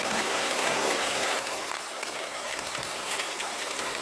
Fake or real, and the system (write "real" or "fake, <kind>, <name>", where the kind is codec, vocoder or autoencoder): fake, codec, SNAC